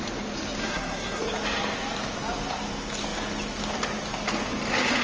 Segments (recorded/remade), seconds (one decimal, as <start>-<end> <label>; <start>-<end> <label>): 0.0-0.6 recorded; 0.6-1.2 remade; 1.2-5.0 recorded